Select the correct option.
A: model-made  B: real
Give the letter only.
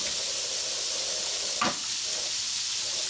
B